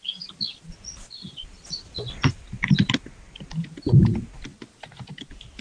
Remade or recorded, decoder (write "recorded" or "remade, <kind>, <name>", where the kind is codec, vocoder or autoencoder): recorded